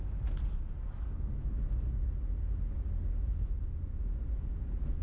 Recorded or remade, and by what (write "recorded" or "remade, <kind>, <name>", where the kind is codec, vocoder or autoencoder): recorded